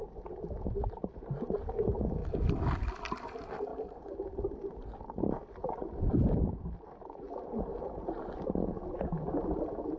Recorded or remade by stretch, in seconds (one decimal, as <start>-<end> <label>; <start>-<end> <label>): 0.0-10.0 recorded